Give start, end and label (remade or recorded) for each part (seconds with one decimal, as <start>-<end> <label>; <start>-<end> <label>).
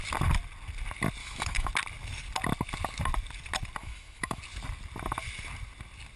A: 0.0-1.2 recorded; 1.2-1.7 remade; 1.7-3.8 recorded; 3.8-4.4 remade; 4.4-6.2 recorded